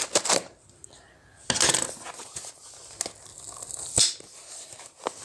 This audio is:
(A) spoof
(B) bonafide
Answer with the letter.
B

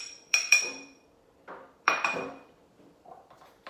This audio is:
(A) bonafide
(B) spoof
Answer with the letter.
B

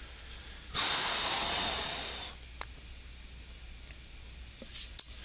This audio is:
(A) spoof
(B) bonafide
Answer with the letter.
B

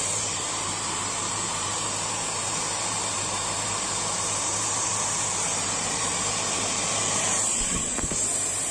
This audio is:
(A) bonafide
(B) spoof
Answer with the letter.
B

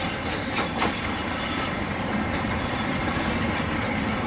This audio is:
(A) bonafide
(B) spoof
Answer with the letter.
B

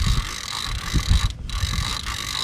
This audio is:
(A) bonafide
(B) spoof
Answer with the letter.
A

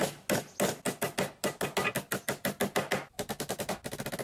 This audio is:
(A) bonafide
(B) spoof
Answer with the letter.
A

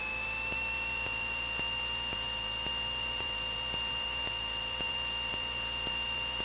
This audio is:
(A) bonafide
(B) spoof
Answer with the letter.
B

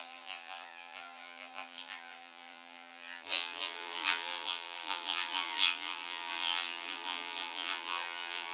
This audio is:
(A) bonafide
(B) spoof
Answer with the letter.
B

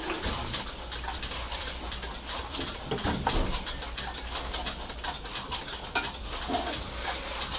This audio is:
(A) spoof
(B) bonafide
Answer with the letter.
B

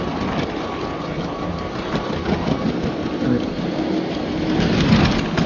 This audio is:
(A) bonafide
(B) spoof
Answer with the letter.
A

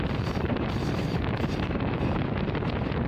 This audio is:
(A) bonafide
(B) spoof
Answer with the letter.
B